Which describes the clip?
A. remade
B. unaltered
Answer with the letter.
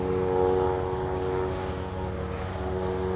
B